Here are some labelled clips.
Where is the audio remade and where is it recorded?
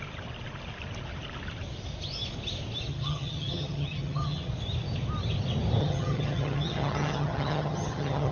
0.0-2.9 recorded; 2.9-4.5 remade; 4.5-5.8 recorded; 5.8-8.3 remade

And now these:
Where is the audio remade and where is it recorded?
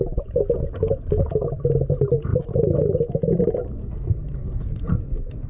0.0-3.8 recorded; 3.8-5.5 remade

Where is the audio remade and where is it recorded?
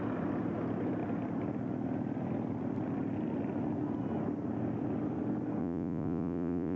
0.0-5.6 recorded; 5.6-6.8 remade